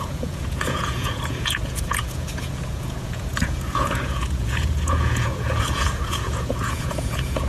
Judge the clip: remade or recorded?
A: remade